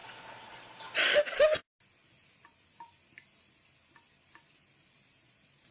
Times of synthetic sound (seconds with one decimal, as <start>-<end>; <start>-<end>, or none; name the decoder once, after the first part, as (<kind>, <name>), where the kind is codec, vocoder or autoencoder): none